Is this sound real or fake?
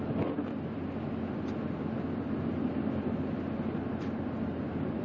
real